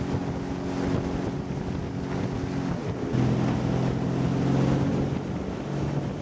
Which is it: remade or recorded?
recorded